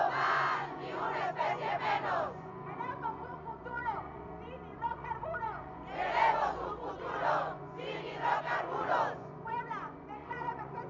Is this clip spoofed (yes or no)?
yes